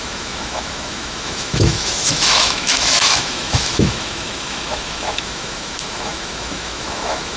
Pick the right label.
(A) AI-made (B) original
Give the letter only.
A